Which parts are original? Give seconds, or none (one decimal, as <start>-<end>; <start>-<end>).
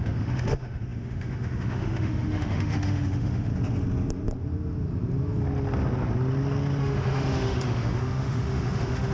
3.5-6.8